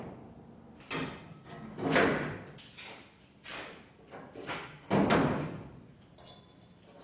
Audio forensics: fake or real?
real